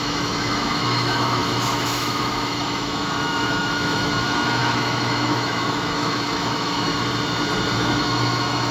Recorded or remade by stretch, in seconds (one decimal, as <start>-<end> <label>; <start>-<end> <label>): 0.0-6.9 remade; 6.9-7.8 recorded; 7.8-8.7 remade